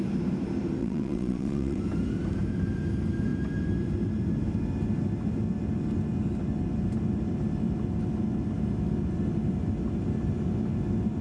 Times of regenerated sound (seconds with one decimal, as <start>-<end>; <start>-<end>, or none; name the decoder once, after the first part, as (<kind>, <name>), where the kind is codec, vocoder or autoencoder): 0.8-1.8 (vocoder, WaveNeXt)